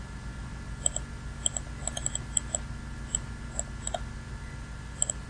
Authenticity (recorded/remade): recorded